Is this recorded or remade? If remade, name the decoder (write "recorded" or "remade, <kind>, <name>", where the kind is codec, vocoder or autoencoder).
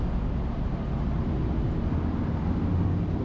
recorded